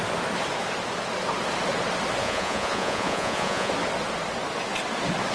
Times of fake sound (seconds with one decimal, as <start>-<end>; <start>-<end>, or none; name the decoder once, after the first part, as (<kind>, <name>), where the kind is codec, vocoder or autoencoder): 2.2-3.7 (vocoder, Vocos)